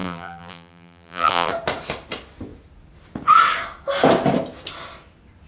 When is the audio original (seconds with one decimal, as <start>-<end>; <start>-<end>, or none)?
1.5-5.5